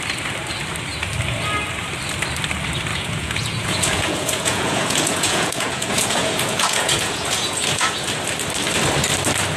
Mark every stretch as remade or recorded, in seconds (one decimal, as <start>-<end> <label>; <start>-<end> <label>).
0.0-2.9 recorded; 2.9-8.1 remade; 8.1-9.6 recorded